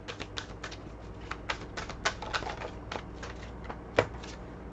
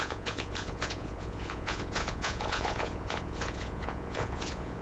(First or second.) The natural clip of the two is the first